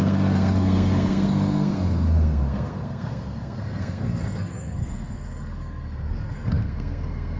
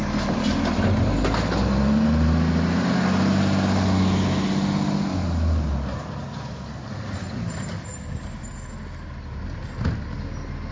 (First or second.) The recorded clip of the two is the second